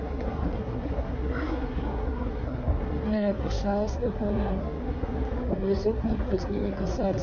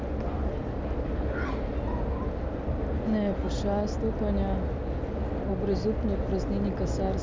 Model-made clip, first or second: first